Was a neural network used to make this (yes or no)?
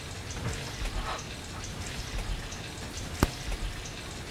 no